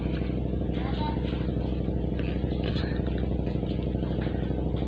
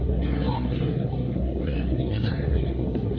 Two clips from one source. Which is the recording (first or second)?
first